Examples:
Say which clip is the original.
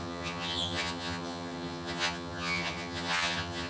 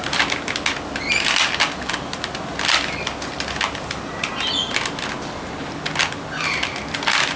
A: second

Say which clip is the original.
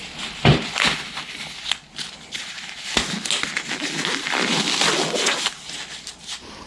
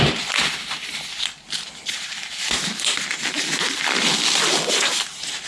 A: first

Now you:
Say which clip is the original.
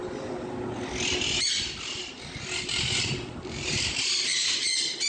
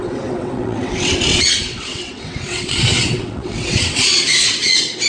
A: first